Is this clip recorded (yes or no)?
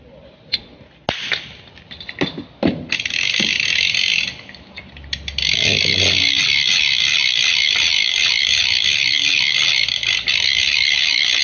yes